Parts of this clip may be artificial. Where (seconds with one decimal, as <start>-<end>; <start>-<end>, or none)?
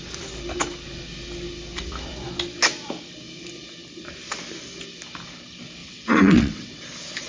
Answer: 5.8-6.8